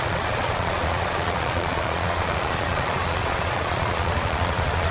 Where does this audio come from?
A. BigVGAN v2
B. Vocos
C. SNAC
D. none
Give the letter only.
B